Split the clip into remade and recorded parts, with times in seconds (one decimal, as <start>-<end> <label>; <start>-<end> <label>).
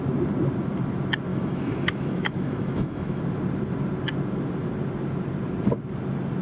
0.0-1.3 recorded; 1.3-3.2 remade; 3.2-6.4 recorded